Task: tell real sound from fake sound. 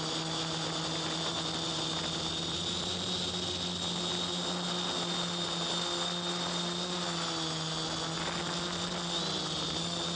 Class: real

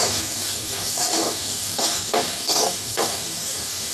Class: fake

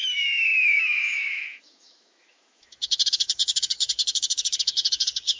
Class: fake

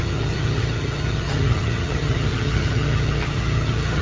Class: fake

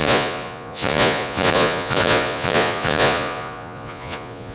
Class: fake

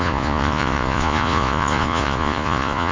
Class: fake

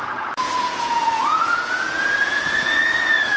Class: fake